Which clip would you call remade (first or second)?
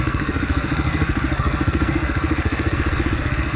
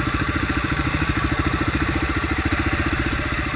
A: first